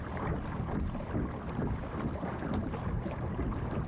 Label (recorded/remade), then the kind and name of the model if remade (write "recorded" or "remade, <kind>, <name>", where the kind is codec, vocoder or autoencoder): remade, vocoder, BigVGAN v2